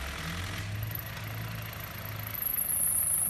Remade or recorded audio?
recorded